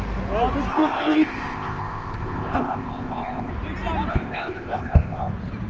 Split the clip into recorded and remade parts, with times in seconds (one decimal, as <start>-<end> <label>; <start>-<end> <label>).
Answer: 0.0-0.7 recorded; 0.7-3.5 remade; 3.5-4.1 recorded; 4.1-5.3 remade; 5.3-5.7 recorded